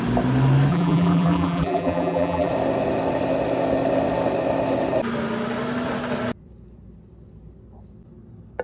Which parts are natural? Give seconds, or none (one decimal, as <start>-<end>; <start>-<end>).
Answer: 0.0-0.7; 2.5-8.6